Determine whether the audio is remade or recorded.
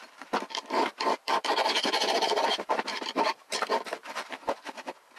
remade